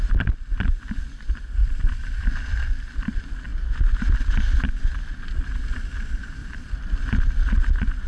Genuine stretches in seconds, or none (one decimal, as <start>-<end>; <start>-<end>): 0.0-1.6; 2.5-6.4; 7.0-8.1